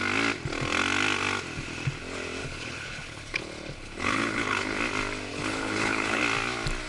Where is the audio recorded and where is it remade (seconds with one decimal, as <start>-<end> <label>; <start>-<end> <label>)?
0.0-2.4 recorded; 2.4-4.8 remade; 4.8-5.3 recorded; 5.3-6.2 remade; 6.2-6.9 recorded